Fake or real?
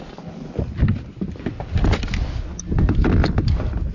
real